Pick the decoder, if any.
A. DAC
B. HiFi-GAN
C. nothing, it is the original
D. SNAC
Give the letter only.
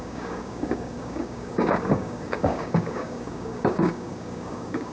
A